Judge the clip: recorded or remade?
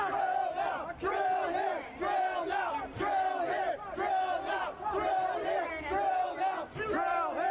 recorded